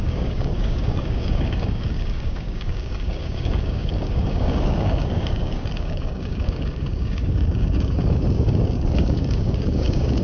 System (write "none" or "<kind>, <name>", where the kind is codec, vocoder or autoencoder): codec, DAC